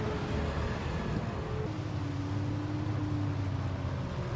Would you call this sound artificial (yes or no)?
no